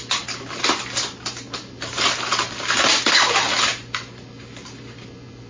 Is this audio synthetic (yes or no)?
no